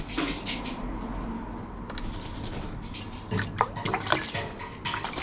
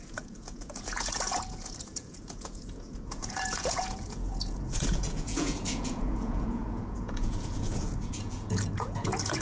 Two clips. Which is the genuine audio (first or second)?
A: first